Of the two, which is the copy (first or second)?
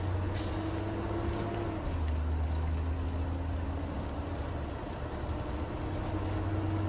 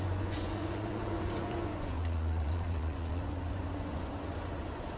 second